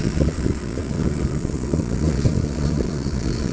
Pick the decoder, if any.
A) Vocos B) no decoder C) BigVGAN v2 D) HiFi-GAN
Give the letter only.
A